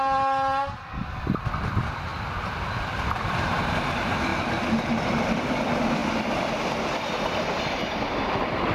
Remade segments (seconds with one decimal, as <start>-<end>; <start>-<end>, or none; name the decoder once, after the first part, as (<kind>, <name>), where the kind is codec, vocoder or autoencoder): 0.0-4.3 (vocoder, BigVGAN v2); 5.0-8.7